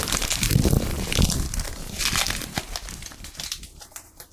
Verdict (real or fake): real